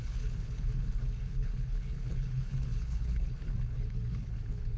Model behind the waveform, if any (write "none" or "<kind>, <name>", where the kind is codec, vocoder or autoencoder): codec, HILCodec